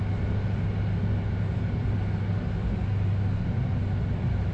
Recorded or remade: recorded